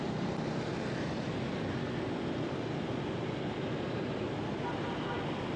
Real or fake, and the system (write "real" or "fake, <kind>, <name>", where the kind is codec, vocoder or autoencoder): real